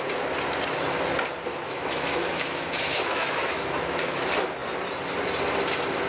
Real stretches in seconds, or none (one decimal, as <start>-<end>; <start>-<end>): 0.0-1.5; 4.0-6.1